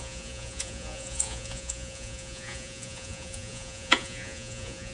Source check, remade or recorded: remade